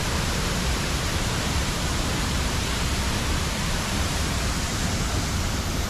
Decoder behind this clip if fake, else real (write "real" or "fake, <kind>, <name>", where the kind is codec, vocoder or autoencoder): fake, vocoder, BigVGAN v2